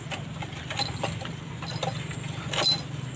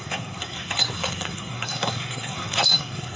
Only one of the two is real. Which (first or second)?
first